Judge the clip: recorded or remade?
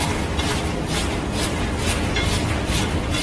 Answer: recorded